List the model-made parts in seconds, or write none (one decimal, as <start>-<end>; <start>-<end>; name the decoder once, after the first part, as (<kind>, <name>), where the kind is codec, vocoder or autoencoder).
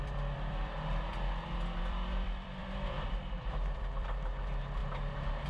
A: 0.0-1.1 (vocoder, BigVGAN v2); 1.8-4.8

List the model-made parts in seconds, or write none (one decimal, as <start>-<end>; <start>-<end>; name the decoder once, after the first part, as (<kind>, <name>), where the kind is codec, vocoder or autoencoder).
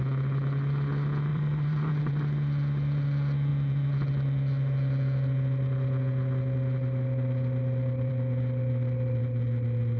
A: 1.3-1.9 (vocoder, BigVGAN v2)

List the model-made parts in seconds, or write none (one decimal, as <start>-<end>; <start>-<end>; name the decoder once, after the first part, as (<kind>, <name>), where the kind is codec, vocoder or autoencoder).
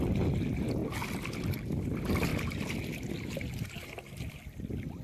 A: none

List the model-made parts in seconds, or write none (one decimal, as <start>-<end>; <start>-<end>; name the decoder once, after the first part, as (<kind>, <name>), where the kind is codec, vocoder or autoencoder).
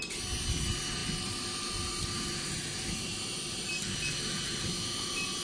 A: none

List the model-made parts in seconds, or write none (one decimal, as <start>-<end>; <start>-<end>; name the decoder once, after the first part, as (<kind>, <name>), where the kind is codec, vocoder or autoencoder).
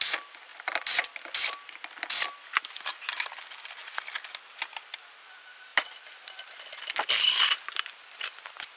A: 0.5-3.3 (vocoder, BigVGAN v2); 5.7-7.9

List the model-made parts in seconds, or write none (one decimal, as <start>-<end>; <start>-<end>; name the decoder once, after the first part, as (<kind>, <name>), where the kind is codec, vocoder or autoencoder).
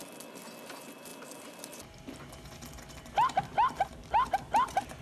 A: none